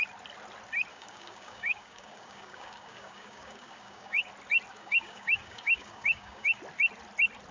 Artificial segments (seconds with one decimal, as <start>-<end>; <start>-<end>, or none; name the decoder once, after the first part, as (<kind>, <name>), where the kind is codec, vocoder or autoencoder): 0.9-4.3 (codec, DAC); 4.7-6.6